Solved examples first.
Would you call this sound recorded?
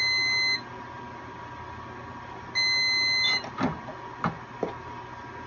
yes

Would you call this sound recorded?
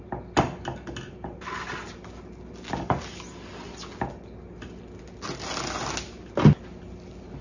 yes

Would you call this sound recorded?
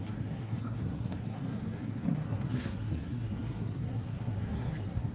no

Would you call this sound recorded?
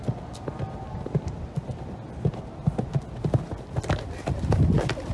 yes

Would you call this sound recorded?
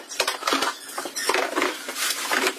yes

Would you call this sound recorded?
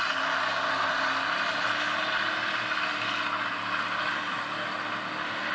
yes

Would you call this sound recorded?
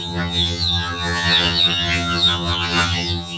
no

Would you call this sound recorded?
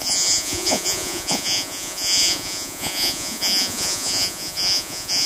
no